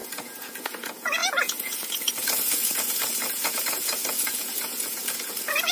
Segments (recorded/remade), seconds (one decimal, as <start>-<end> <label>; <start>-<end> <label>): 0.0-5.7 remade